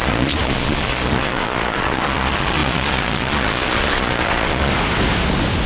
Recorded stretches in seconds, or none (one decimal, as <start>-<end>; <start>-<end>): 4.7-5.7